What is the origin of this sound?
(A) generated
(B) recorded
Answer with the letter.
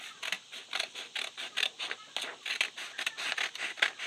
B